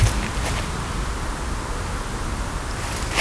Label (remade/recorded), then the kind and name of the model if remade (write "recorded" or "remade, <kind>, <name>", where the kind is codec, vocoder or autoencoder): recorded